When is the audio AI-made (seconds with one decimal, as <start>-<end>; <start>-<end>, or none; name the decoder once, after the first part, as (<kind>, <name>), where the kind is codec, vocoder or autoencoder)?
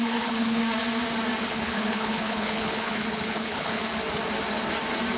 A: 0.0-0.6 (codec, HILCodec); 1.4-3.8